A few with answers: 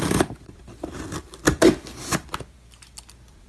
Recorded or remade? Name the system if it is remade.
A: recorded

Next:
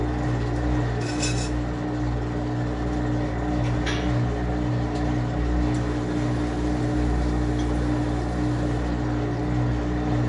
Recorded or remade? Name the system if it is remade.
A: recorded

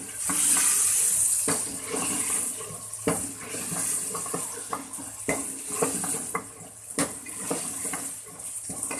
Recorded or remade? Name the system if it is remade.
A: recorded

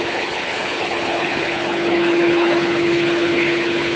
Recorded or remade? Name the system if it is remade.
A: remade, codec, HILCodec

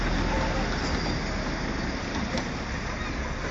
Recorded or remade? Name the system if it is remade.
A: recorded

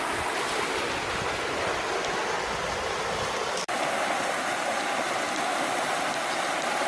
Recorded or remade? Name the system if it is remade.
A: recorded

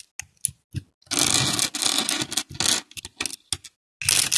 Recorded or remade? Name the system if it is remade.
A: recorded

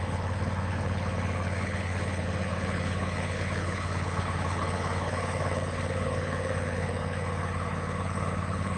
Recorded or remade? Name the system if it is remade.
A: remade, codec, HILCodec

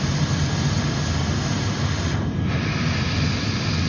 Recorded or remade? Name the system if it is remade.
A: recorded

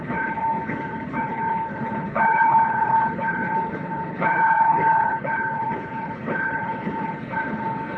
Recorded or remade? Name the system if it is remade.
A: remade, codec, HILCodec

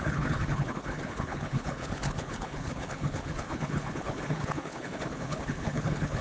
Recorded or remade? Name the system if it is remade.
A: remade, codec, HILCodec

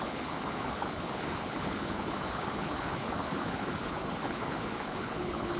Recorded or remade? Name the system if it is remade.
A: remade, codec, HILCodec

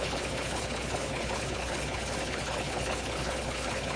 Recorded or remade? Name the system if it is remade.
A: remade, codec, HILCodec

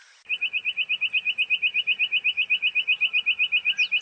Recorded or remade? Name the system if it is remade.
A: recorded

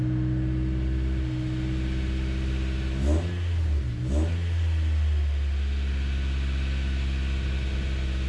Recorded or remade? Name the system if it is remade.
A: recorded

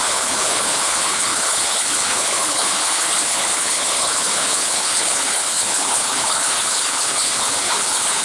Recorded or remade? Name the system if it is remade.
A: remade, codec, HILCodec